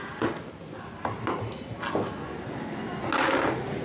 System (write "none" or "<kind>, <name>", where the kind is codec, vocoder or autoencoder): none